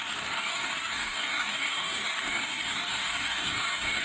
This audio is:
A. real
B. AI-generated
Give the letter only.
B